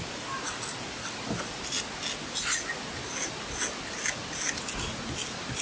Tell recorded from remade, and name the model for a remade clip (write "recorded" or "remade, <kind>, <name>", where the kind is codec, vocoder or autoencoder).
recorded